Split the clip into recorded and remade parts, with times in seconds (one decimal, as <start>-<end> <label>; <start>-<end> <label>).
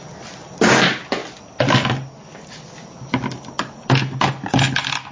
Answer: 0.0-5.1 recorded